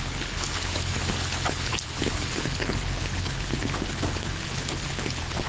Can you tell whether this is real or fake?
fake